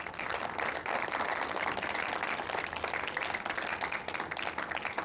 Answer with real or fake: real